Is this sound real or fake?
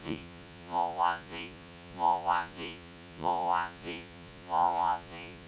fake